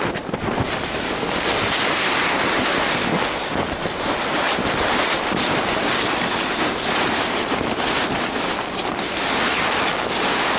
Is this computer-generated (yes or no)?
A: no